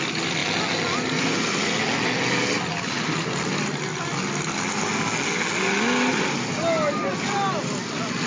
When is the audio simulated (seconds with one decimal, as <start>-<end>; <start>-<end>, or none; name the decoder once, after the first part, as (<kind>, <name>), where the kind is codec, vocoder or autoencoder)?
none